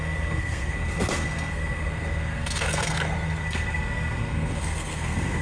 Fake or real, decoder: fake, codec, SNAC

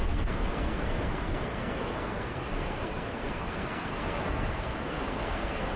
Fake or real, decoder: fake, codec, SNAC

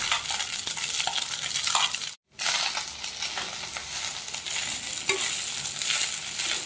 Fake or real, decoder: real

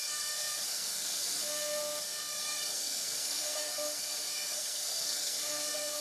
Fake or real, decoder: fake, codec, SNAC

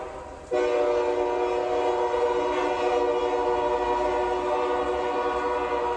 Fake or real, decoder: real